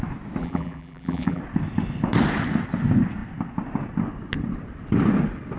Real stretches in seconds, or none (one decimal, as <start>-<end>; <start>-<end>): 0.0-0.4; 1.4-5.6